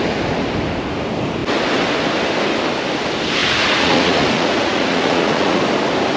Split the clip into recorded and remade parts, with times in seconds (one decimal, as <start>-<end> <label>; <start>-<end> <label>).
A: 0.0-3.4 recorded; 3.4-5.6 remade; 5.6-6.2 recorded